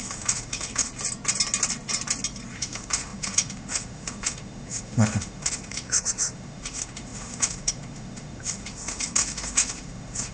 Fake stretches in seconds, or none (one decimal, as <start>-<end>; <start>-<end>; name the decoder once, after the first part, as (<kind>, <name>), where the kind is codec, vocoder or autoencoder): 0.0-0.9 (autoencoder, DAC-VAE); 2.5-10.3

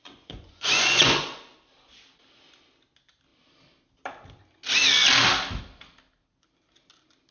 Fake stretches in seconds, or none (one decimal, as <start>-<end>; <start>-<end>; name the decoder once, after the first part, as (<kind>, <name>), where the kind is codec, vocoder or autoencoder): 0.0-1.4 (vocoder, Vocos)

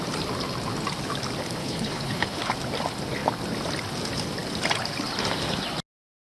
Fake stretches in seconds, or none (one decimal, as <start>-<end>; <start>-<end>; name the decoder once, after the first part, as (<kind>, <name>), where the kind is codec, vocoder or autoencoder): 1.6-2.5 (codec, HILCodec)

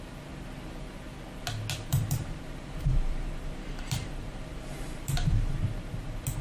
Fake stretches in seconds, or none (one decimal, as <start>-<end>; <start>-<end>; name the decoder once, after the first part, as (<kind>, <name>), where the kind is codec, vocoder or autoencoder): 1.9-5.7 (vocoder, BigVGAN v2)

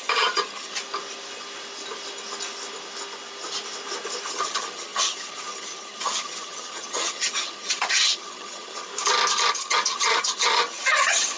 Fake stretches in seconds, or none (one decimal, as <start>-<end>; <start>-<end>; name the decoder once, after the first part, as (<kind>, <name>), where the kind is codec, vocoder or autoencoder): 0.0-0.8 (vocoder, HiFi-GAN); 4.3-8.9; 9.5-11.4

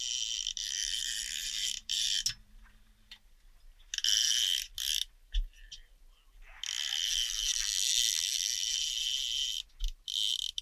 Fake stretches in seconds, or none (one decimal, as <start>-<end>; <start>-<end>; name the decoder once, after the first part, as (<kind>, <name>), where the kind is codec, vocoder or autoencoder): 0.8-2.1 (vocoder, BigVGAN v2)

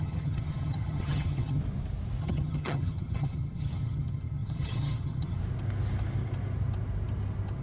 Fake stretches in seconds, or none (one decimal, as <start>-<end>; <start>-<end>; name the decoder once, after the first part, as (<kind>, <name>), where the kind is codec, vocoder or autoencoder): 0.0-1.6 (vocoder, HiFi-GAN); 2.2-5.4